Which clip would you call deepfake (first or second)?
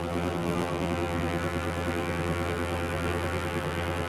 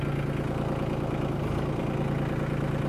first